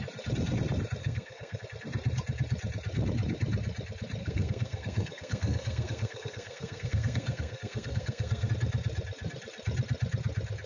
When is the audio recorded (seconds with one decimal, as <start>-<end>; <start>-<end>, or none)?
0.0-1.0; 1.6-4.2; 8.5-10.7